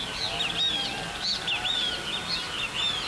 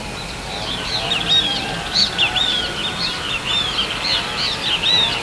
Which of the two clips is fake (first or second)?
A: second